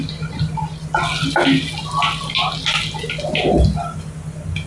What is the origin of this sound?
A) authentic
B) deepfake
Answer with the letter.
A